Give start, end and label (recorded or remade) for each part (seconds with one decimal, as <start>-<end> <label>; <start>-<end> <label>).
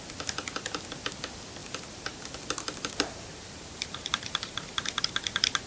0.0-1.6 recorded; 1.6-5.0 remade; 5.0-5.7 recorded